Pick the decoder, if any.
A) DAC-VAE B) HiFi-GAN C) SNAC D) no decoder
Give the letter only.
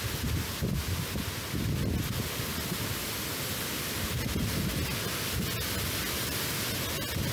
D